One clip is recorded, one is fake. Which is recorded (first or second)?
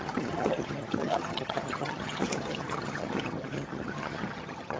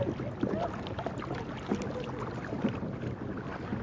second